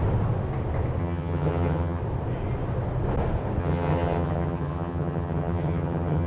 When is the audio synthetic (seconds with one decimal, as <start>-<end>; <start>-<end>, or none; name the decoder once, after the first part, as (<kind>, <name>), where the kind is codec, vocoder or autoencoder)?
1.0-2.0 (vocoder, HiFi-GAN); 3.6-6.3